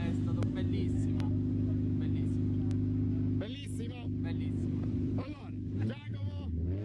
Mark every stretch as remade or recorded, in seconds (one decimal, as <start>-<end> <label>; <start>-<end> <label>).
0.0-4.6 recorded; 4.6-5.4 remade; 5.4-6.8 recorded